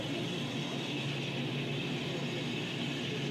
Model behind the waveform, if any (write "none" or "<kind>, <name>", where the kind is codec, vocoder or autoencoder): none